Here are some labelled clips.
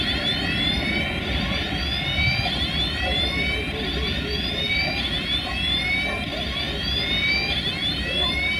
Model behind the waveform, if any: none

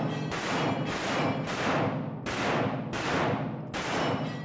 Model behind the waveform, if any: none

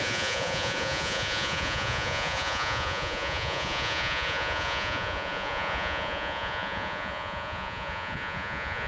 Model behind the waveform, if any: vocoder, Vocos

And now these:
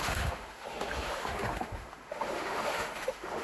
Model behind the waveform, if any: autoencoder, DAC-VAE